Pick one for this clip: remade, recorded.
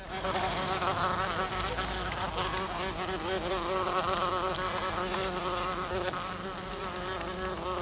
recorded